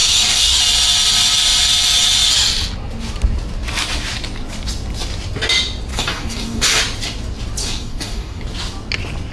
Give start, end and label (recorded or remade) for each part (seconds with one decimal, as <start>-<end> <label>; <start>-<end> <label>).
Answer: 0.0-0.6 remade; 0.6-5.9 recorded; 5.9-6.8 remade; 6.8-7.6 recorded; 7.6-8.4 remade; 8.4-9.3 recorded